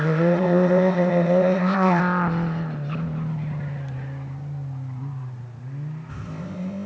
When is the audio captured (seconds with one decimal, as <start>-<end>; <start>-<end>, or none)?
2.0-6.1